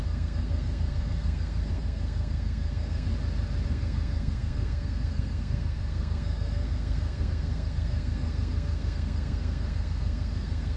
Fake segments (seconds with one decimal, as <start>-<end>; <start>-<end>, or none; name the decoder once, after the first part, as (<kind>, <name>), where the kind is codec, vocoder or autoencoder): 0.0-3.1 (codec, SNAC); 3.7-10.8